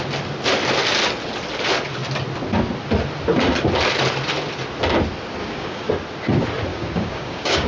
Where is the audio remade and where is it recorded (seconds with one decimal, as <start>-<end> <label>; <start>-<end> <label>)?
0.0-5.4 recorded; 5.4-5.9 remade; 5.9-6.7 recorded; 6.7-7.7 remade